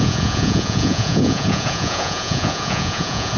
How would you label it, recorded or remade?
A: remade